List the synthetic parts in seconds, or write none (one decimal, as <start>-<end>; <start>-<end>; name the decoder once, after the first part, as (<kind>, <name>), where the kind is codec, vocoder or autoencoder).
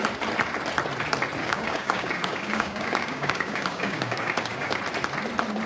1.4-4.8 (codec, DAC)